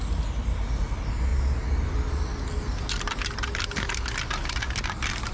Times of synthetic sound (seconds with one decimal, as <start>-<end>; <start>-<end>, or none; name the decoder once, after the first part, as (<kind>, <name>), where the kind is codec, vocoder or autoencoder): none